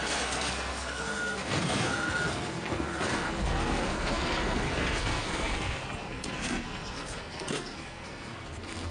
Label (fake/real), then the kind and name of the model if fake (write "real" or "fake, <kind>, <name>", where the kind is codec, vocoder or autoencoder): fake, codec, SNAC